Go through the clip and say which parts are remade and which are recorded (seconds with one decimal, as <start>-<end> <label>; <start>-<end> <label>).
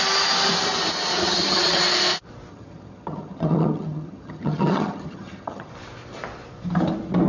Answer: 0.0-1.2 recorded; 1.2-1.8 remade; 1.8-2.5 recorded; 2.5-5.7 remade; 5.7-7.3 recorded